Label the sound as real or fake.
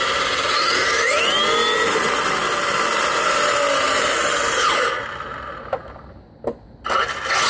real